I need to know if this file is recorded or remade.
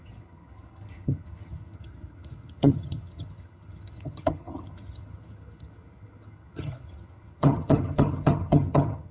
remade